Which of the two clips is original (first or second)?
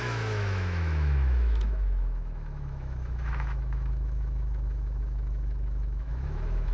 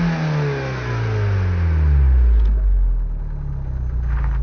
second